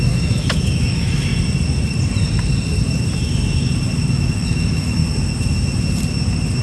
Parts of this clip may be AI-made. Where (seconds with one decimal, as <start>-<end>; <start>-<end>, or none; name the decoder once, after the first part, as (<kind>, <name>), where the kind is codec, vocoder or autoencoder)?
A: 0.0-1.3 (autoencoder, DAC-VAE); 4.1-5.0